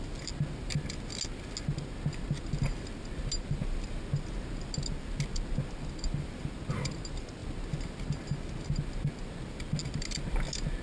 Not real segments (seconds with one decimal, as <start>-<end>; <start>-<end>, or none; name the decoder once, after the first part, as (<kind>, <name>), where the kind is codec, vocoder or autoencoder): none